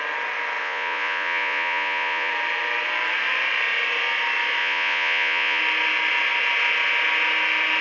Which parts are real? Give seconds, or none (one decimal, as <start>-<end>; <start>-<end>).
0.0-0.6; 2.3-4.6; 5.6-7.8